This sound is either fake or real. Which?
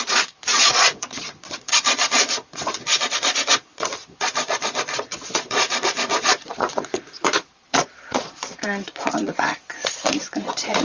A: fake